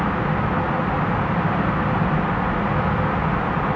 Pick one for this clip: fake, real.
real